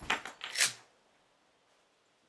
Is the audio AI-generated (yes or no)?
no